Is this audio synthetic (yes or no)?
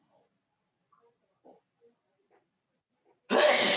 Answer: no